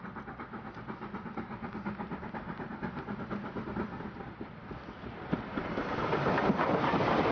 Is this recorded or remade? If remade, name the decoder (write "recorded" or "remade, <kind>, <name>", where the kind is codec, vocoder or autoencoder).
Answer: recorded